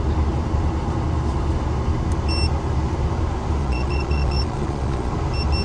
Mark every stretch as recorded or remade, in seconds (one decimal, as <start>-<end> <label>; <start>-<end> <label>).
0.0-3.6 recorded; 3.6-5.1 remade; 5.1-5.6 recorded